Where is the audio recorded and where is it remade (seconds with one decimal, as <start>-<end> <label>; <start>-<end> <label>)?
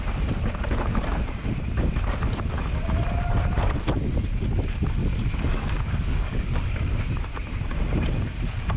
0.0-5.0 recorded; 5.0-6.9 remade; 6.9-8.8 recorded